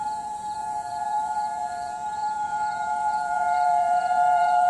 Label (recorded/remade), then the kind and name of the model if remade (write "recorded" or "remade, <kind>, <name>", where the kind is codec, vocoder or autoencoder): remade, vocoder, Vocos